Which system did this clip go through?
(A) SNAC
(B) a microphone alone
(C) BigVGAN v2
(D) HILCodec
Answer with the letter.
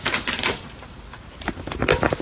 C